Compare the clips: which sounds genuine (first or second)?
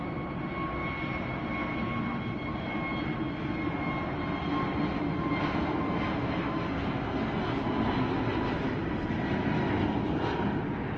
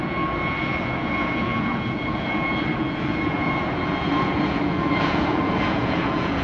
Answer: first